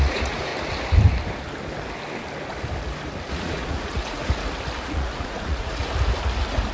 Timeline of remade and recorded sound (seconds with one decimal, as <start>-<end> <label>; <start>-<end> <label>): 0.0-0.5 remade; 0.5-3.3 recorded; 3.3-4.2 remade; 4.2-4.8 recorded; 4.8-5.8 remade; 5.8-6.7 recorded